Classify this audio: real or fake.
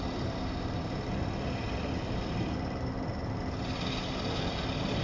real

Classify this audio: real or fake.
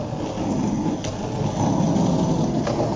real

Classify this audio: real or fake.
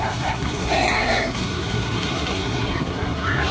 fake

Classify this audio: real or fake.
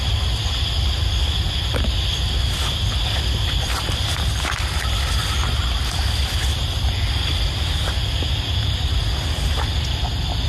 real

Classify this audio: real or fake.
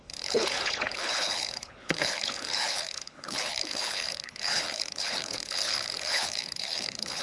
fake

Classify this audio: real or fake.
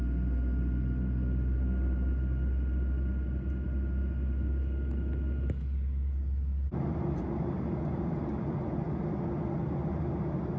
real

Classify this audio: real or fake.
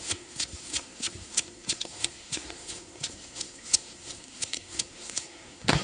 fake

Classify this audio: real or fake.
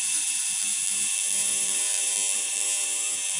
real